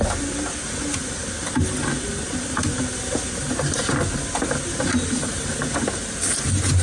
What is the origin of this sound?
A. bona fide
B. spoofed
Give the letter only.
A